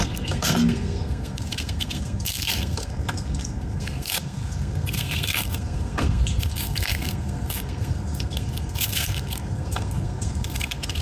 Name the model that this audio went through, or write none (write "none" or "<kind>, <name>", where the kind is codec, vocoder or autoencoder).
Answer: codec, SNAC